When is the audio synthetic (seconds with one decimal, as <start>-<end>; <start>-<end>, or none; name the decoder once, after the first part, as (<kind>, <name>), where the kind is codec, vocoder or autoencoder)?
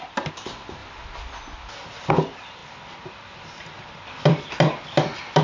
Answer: none